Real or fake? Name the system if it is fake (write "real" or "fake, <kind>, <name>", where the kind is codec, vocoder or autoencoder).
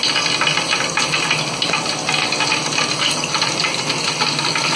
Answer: real